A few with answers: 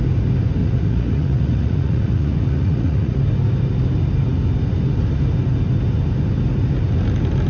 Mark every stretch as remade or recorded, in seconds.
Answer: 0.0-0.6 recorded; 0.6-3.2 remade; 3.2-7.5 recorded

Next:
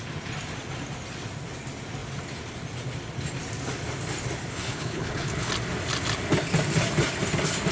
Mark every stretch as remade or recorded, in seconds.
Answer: 0.0-4.5 recorded; 4.5-5.5 remade; 5.5-7.7 recorded